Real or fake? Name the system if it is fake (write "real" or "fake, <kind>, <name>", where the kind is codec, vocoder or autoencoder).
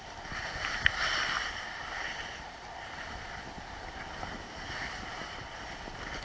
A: real